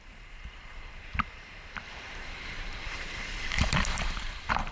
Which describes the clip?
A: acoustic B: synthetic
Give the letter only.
B